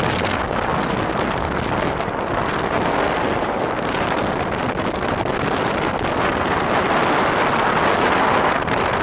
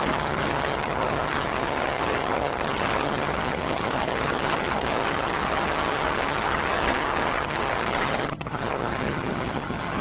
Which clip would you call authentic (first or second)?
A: first